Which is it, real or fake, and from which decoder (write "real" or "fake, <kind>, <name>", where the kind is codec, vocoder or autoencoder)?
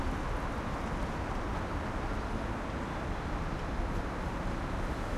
real